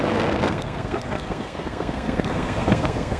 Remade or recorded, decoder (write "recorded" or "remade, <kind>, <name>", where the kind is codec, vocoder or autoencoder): remade, codec, SNAC